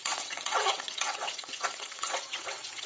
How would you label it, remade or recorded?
remade